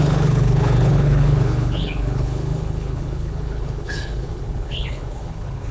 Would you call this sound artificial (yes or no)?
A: yes